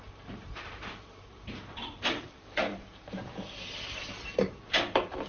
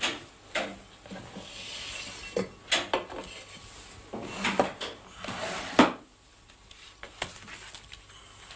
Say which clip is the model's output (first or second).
first